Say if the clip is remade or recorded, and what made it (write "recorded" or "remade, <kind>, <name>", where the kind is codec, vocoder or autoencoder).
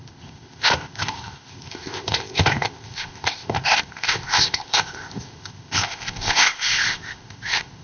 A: remade, codec, ZipCodec